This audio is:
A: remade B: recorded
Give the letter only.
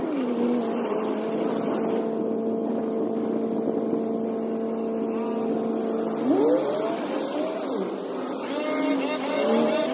B